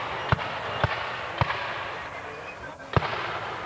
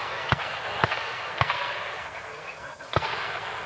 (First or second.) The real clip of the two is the first